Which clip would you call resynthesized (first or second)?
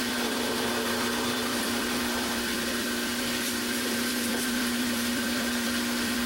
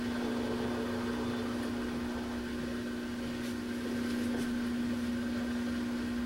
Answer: first